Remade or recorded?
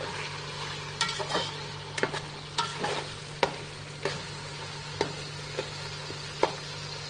recorded